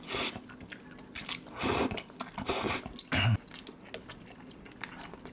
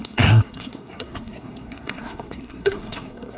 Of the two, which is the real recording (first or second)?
first